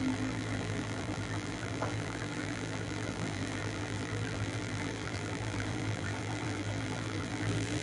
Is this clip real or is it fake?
fake